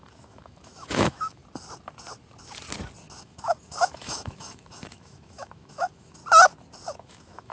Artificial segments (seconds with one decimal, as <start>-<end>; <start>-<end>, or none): 0.0-1.4; 3.2-6.2; 7.0-7.5